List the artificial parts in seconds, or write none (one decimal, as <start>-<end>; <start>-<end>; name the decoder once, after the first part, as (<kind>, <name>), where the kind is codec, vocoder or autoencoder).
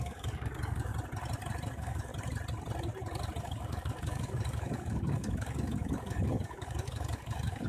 0.0-0.9 (codec, DAC); 1.7-2.1; 3.4-7.7